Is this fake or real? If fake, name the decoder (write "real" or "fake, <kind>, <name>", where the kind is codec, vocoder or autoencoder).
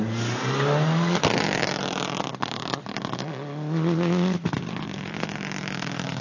real